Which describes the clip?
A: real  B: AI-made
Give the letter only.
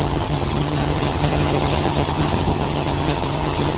B